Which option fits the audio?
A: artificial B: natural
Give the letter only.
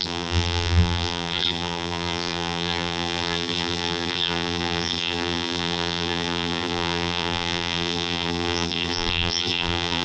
A